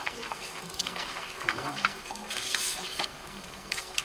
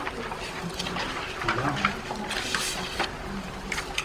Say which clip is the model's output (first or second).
first